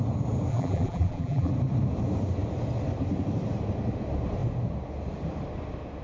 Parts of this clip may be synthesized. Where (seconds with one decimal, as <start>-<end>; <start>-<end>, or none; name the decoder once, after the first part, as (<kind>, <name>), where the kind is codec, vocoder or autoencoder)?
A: 0.5-1.5 (vocoder, BigVGAN v2)